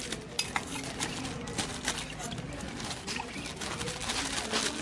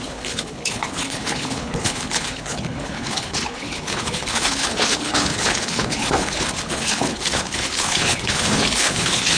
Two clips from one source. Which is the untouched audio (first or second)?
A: first